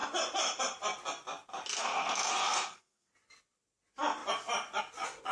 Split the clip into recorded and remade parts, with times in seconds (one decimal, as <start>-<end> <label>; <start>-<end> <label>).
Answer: 0.0-1.8 recorded; 1.8-3.1 remade; 3.1-5.3 recorded